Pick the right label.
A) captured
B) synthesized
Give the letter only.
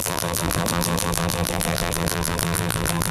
B